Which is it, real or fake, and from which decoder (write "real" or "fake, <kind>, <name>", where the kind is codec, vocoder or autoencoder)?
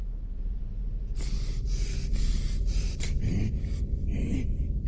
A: fake, vocoder, BigVGAN v2